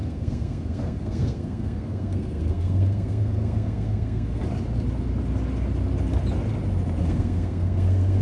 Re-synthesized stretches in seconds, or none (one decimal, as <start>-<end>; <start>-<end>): 0.0-4.4; 7.0-8.2